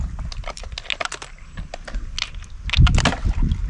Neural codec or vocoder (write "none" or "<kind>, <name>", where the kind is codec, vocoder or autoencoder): none